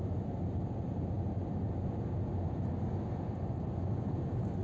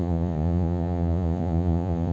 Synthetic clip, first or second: second